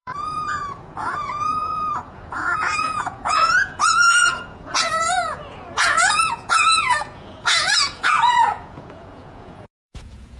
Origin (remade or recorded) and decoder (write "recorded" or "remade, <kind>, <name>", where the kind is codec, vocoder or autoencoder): remade, vocoder, Vocos